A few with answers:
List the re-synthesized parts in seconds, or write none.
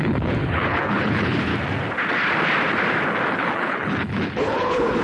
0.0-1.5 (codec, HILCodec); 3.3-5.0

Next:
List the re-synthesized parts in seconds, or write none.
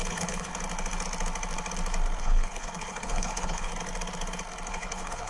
0.0-0.5 (codec, HILCodec); 2.2-3.7; 4.7-5.3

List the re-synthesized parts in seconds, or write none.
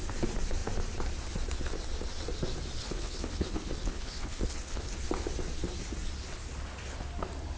2.8-5.0 (codec, HILCodec)